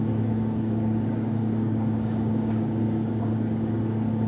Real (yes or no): no